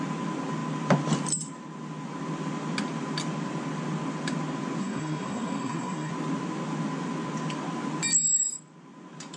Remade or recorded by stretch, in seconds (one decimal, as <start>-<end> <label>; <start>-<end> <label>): 0.0-4.8 recorded; 4.8-6.1 remade; 6.1-9.4 recorded